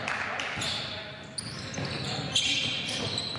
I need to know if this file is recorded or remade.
recorded